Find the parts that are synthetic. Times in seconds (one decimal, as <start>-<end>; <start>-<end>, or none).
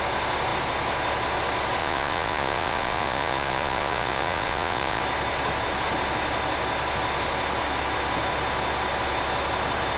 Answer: 1.8-5.0